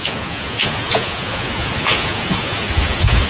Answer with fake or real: fake